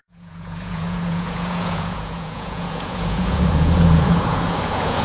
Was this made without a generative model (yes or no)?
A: no